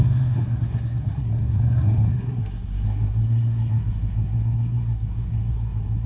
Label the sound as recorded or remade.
remade